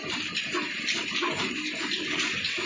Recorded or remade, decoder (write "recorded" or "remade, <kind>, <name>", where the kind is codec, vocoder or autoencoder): recorded